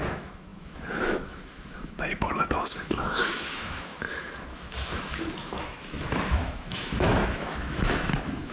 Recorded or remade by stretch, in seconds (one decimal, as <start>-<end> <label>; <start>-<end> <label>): 0.0-8.5 remade